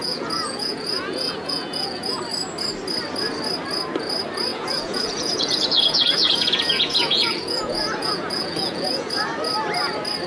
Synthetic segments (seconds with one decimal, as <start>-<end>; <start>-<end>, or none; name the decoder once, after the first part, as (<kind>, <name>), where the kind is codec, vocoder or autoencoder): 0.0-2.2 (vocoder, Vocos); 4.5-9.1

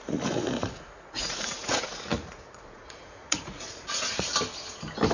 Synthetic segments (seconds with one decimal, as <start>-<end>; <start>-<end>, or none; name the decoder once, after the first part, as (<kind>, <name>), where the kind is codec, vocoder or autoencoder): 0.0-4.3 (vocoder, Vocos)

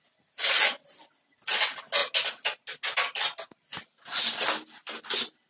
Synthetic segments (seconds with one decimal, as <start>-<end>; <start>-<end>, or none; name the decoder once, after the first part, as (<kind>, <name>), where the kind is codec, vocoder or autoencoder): none

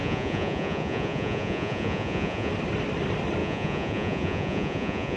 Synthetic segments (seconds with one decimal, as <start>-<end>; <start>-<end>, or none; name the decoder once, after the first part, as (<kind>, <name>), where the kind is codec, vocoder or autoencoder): 0.0-2.5 (vocoder, Vocos); 3.4-5.2

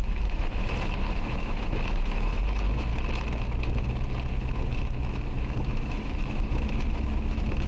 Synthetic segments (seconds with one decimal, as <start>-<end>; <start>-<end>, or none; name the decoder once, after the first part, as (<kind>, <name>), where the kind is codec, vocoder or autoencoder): 0.0-2.9 (autoencoder, DAC-VAE); 4.3-7.7